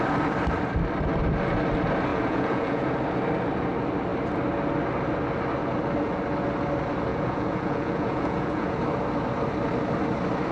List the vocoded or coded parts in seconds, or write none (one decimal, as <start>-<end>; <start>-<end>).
2.1-2.9; 7.1-8.8